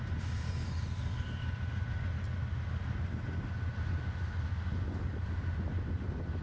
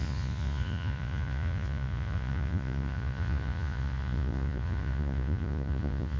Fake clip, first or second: second